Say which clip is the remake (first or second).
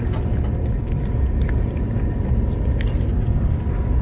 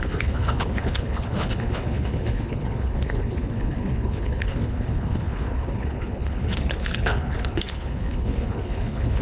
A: second